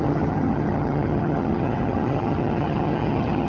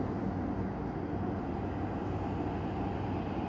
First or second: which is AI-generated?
first